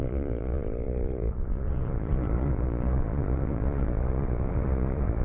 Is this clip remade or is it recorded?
remade